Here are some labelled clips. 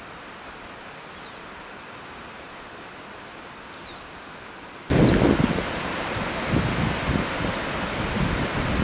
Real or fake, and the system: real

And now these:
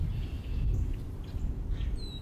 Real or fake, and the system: real